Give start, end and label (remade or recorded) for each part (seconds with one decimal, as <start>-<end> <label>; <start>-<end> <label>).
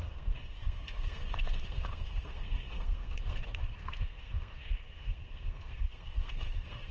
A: 0.0-6.9 remade